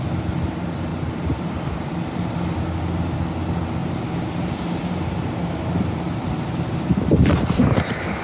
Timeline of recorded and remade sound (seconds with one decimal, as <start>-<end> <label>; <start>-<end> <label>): 0.0-0.9 recorded; 0.9-2.2 remade; 2.2-3.8 recorded; 3.8-8.2 remade